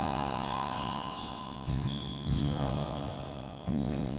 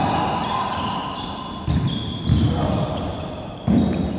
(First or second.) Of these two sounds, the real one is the second